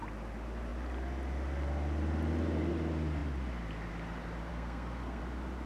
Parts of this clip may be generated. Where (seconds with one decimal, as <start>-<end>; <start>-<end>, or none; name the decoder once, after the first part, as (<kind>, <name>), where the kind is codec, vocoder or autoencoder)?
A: 4.5-5.2 (codec, SNAC)